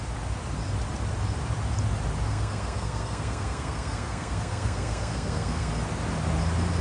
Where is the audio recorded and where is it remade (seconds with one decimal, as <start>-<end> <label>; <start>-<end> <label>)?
0.0-2.3 recorded; 2.3-5.7 remade; 5.7-6.8 recorded